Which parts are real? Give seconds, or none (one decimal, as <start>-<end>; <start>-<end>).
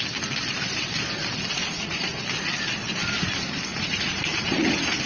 0.0-1.6; 2.2-3.7